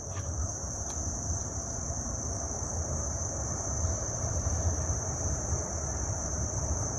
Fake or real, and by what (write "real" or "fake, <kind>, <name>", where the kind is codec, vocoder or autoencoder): fake, vocoder, BigVGAN v2